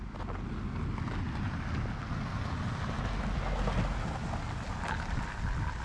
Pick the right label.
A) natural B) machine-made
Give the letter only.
A